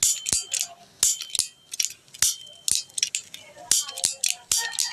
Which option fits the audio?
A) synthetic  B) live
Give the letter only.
B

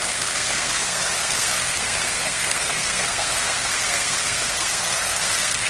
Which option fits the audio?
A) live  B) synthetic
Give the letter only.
B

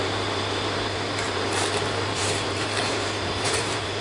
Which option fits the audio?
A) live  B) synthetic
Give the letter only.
B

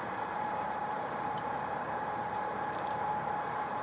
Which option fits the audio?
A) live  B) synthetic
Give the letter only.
B